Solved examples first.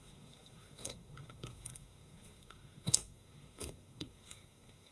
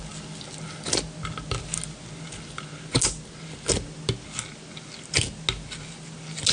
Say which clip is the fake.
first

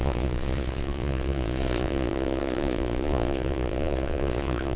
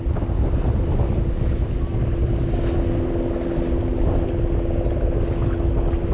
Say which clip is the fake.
first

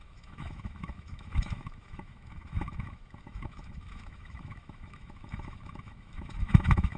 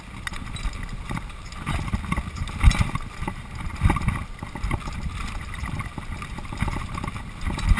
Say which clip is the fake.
first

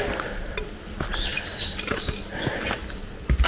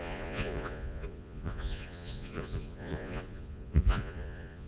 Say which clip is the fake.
second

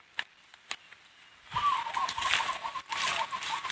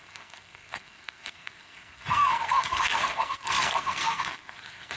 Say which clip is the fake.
second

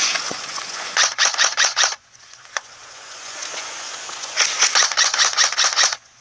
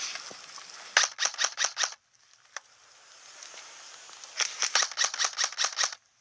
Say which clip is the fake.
first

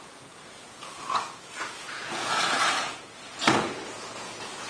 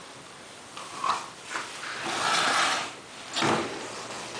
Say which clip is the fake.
first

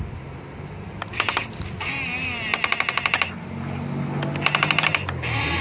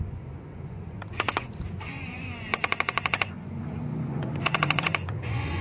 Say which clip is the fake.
second